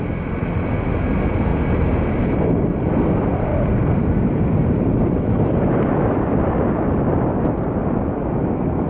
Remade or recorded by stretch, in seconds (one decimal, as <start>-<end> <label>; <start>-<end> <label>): 0.0-3.5 recorded; 3.5-7.4 remade; 7.4-8.9 recorded